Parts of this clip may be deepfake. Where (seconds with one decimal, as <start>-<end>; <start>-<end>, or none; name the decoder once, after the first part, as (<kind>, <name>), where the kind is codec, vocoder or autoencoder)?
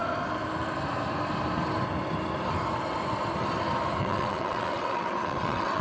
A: 4.0-5.8 (vocoder, WaveNeXt)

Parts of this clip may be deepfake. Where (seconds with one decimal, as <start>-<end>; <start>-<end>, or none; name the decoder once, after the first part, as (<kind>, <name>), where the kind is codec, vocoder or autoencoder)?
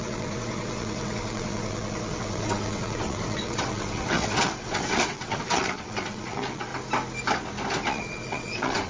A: 0.0-6.7 (vocoder, WaveNeXt); 7.9-8.9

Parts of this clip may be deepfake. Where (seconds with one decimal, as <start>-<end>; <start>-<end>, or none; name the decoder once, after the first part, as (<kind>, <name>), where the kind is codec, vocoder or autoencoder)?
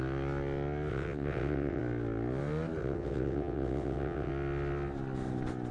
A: 0.9-1.8 (vocoder, WaveNeXt); 2.8-4.3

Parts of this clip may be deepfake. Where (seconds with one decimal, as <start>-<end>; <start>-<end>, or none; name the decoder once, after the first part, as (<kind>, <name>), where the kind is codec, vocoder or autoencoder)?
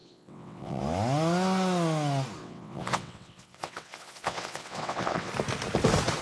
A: 0.0-0.8 (vocoder, WaveNeXt); 2.4-5.3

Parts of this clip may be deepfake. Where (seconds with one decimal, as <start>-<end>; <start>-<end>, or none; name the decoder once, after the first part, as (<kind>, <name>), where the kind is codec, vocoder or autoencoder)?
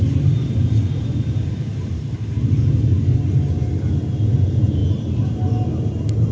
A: none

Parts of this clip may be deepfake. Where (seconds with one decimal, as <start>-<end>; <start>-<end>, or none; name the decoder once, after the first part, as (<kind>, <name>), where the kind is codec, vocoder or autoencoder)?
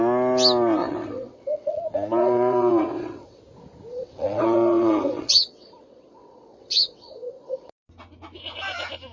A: 0.8-1.8 (vocoder, WaveNeXt); 2.2-3.4; 3.9-7.7